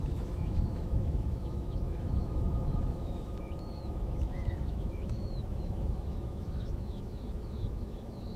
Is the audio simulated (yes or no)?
yes